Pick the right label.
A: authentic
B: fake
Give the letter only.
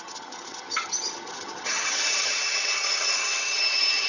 B